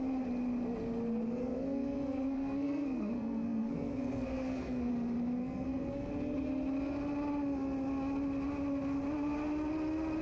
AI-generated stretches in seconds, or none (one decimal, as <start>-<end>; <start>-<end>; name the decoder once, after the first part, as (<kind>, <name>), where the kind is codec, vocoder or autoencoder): 1.4-4.9 (codec, SNAC); 5.4-6.1